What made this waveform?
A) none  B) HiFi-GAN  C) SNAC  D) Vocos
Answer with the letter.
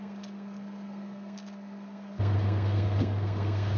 C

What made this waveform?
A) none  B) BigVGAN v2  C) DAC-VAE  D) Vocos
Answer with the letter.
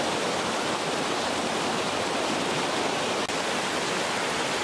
A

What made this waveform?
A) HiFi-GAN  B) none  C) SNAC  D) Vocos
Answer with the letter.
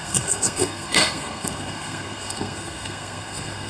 C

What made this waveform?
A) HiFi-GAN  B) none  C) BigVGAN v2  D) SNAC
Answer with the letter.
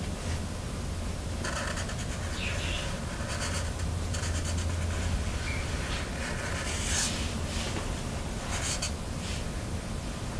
B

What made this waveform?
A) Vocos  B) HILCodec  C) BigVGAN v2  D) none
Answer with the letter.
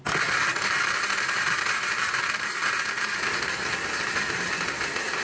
D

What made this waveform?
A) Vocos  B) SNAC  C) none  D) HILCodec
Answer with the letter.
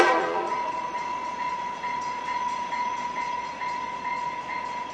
A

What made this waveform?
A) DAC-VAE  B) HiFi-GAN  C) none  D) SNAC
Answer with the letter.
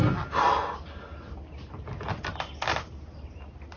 C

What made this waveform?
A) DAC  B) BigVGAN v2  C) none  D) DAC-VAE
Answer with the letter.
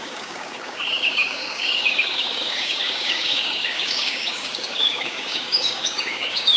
A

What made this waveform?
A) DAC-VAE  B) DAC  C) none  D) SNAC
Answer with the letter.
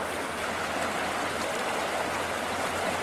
C